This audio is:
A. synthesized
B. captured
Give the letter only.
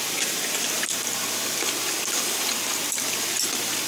B